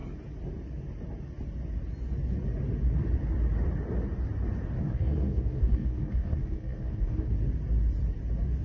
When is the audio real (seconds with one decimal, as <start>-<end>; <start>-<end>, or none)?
0.0-4.8; 7.3-8.6